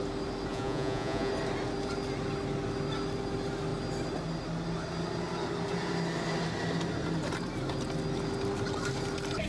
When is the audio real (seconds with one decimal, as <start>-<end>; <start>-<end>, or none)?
0.0-0.5; 1.3-9.5